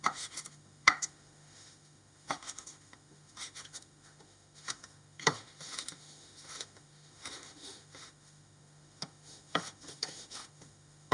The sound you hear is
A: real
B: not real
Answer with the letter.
B